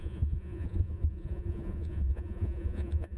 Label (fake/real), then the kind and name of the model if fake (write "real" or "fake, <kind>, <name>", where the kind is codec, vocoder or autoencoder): fake, vocoder, Vocos